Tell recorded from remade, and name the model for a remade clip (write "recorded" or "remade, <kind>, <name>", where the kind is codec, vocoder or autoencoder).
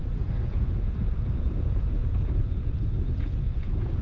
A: remade, vocoder, Vocos